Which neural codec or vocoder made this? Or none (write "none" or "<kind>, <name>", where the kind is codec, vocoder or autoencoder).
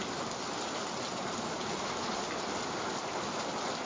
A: none